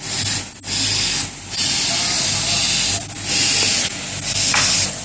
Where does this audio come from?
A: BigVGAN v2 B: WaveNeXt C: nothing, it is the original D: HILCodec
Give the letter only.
C